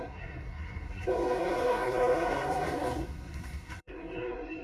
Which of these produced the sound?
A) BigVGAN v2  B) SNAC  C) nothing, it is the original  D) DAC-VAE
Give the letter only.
B